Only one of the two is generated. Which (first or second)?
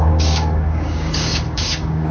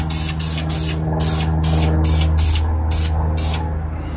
first